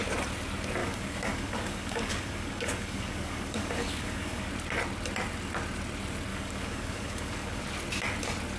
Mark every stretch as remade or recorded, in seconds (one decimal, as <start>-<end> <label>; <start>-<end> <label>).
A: 0.0-0.8 recorded; 0.8-4.5 remade; 4.5-6.3 recorded; 6.3-7.6 remade; 7.6-8.6 recorded